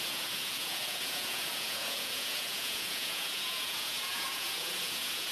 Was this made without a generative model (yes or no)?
no